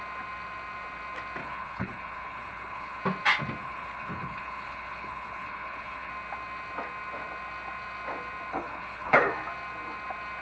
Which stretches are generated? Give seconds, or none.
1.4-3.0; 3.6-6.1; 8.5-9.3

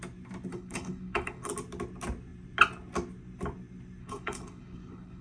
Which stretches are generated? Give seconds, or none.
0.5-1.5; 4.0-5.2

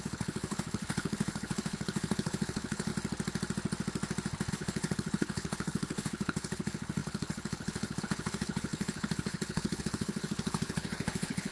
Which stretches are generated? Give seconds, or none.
0.0-2.9; 4.5-11.5